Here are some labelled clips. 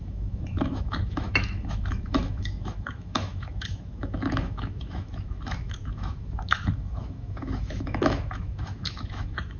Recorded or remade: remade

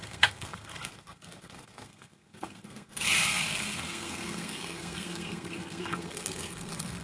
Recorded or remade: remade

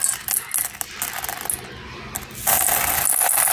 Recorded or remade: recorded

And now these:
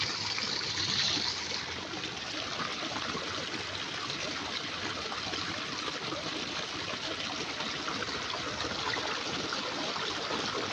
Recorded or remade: recorded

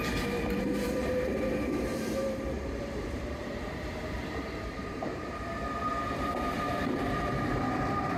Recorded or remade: remade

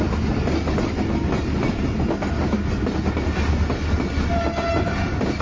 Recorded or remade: recorded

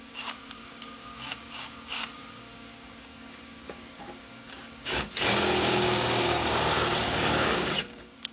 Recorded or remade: remade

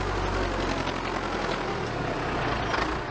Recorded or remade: recorded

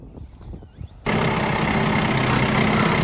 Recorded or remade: recorded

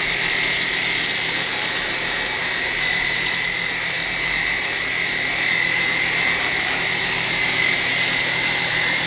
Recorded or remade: remade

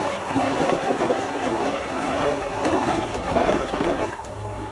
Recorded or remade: remade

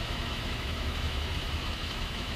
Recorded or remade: remade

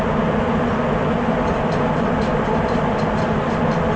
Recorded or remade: recorded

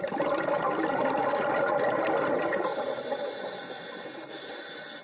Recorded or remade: recorded